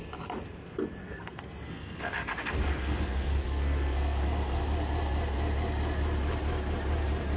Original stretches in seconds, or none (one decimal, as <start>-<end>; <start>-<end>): 0.0-1.0; 4.6-7.4